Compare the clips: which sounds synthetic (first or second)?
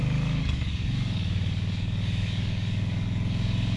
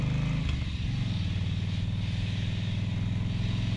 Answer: first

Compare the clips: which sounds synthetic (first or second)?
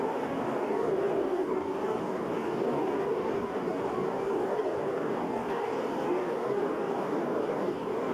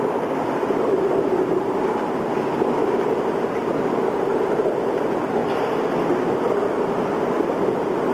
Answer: first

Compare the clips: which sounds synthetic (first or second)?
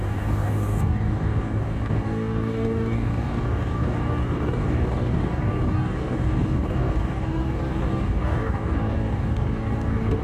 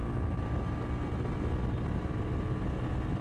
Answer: first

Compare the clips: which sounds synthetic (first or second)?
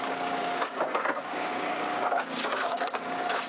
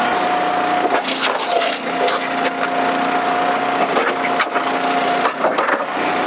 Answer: first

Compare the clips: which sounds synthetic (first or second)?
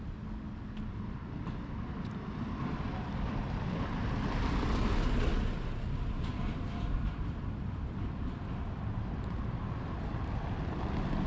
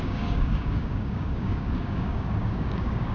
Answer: second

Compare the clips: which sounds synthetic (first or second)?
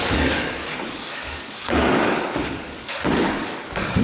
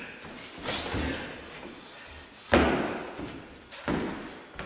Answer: first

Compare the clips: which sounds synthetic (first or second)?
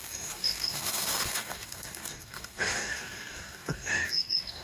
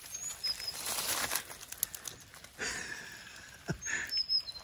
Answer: first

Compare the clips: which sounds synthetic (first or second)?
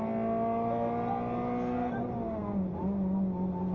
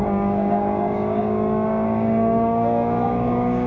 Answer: second